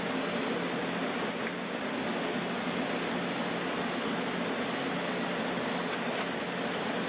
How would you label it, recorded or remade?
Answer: recorded